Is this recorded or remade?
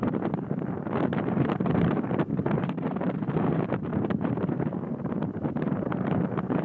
remade